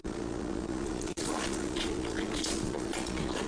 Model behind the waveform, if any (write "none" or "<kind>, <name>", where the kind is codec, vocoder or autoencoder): vocoder, Vocos